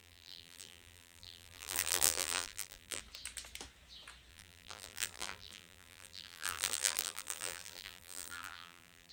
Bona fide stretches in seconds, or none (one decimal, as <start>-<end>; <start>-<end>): 3.0-4.3